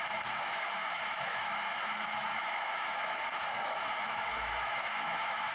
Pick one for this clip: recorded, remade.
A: remade